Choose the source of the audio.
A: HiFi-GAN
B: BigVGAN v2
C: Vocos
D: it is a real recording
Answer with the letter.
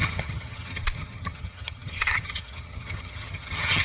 A